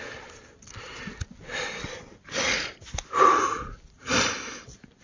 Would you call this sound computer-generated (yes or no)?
no